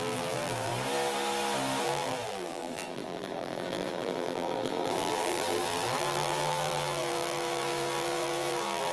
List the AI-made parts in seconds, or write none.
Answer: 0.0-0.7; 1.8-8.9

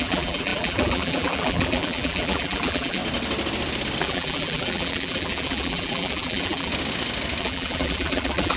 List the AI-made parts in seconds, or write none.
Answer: 0.0-3.0; 4.0-6.7; 7.4-8.6

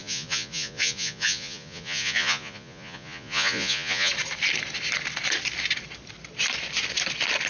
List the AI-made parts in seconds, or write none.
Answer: 0.0-4.1

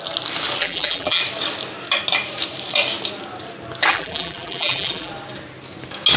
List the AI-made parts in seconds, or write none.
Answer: 0.6-1.2; 3.9-5.1

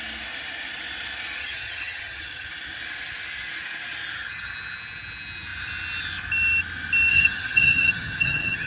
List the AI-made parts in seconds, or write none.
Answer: 1.4-2.5; 7.1-8.7

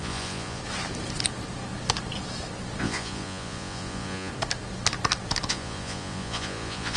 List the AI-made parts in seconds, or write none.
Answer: 0.0-0.6; 2.8-4.3; 5.5-7.0

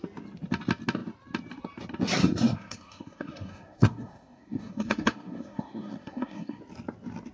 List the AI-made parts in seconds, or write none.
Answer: 2.2-6.6

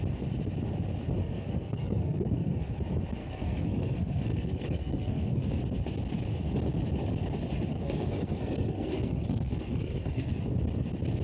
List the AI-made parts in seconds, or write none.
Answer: 1.2-2.7; 3.2-5.6; 7.7-10.4